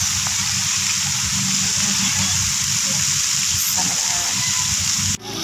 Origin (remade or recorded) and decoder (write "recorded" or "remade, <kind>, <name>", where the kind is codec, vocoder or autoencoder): recorded